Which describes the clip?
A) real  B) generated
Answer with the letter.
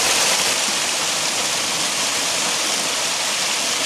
A